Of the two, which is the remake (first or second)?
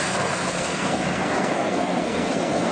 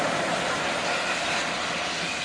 first